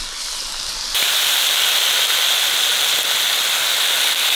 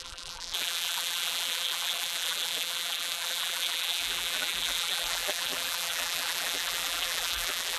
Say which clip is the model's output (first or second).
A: second